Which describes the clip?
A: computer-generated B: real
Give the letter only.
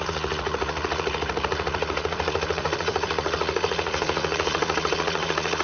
A